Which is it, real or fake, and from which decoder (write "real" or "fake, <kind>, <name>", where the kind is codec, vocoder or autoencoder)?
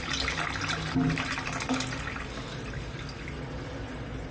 real